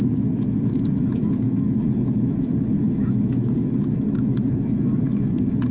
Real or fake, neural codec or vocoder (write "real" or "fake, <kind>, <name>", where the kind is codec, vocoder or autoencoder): fake, autoencoder, DAC-VAE